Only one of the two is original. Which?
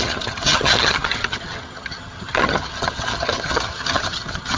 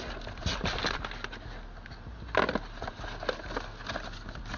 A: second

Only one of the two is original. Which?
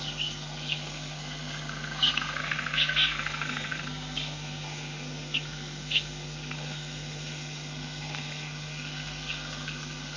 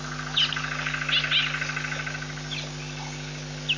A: second